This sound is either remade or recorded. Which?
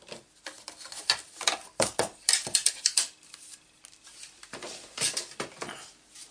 recorded